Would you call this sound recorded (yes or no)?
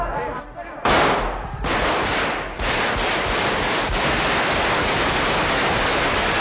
yes